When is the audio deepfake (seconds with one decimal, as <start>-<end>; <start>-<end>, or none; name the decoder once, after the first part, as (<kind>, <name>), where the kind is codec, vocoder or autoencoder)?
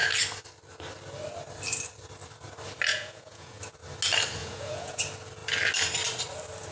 2.9-3.6 (vocoder, Vocos); 4.4-5.0